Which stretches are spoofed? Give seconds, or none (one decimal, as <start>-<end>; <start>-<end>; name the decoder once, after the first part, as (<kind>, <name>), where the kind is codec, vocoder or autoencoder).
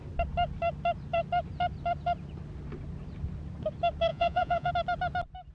4.1-4.7 (vocoder, Vocos)